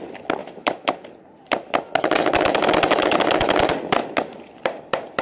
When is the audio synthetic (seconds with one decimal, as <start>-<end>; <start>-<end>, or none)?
0.4-0.9; 2.0-3.7